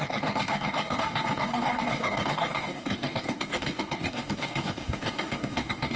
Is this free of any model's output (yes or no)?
no